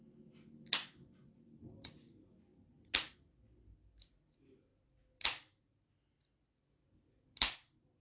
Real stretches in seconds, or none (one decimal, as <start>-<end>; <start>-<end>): 0.0-8.0